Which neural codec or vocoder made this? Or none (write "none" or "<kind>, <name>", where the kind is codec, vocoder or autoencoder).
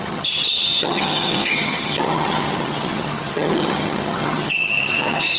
vocoder, HiFi-GAN